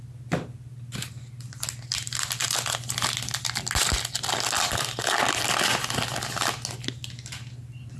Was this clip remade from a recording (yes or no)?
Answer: no